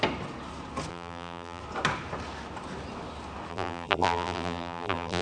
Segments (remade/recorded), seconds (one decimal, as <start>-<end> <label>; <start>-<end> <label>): 0.0-0.9 recorded; 0.9-1.6 remade; 1.6-3.5 recorded; 3.5-5.2 remade